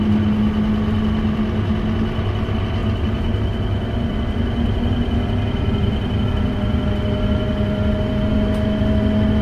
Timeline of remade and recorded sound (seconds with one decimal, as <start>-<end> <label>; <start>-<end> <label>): 0.0-9.4 recorded